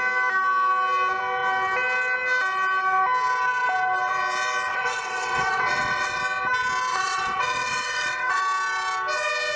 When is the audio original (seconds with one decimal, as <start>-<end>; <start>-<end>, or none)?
0.0-4.7; 6.2-6.9; 8.4-9.6